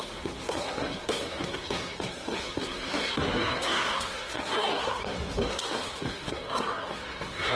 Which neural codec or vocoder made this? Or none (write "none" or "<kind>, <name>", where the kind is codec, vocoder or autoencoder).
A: codec, SNAC